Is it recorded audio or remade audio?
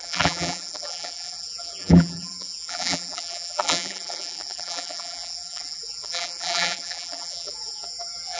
remade